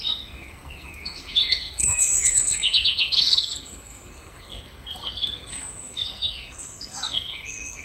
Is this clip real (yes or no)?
no